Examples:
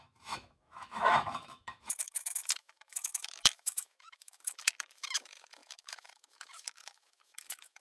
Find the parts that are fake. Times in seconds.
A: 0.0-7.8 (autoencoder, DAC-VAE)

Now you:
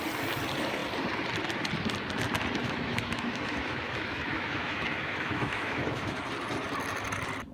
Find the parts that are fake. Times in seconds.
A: 2.6-6.2 (autoencoder, DAC-VAE)

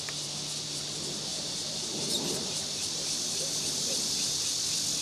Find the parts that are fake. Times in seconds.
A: 1.3-4.3 (vocoder, BigVGAN v2)

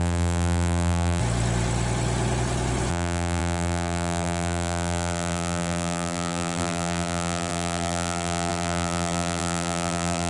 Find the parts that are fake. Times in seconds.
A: 0.0-1.2 (vocoder, BigVGAN v2); 2.9-10.3

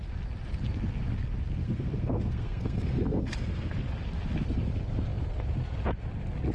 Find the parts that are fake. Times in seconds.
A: 1.6-3.7 (codec, SNAC)

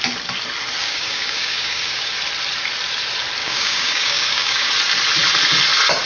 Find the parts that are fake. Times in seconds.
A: 0.8-2.1 (codec, DAC); 3.4-4.7

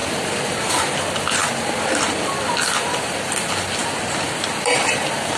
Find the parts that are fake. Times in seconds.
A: 3.8-5.0 (vocoder, BigVGAN v2)

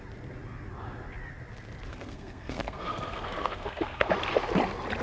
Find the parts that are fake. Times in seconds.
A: 1.9-4.1 (codec, SNAC)